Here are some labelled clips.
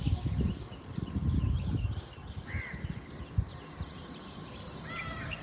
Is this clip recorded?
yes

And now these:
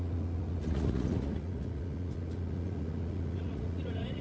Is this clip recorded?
no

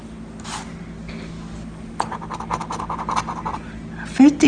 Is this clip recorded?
yes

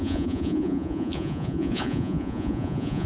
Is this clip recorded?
no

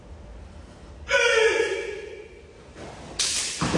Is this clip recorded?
yes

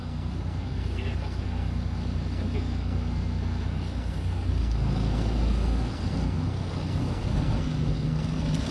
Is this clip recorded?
no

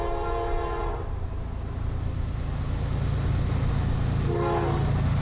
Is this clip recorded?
yes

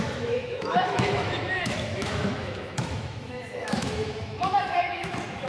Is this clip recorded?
no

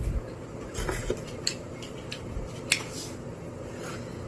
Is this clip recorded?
yes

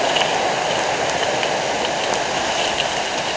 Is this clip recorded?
yes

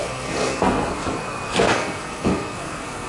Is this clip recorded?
no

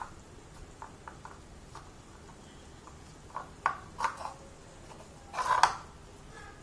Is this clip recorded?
yes